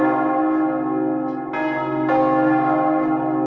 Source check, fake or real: real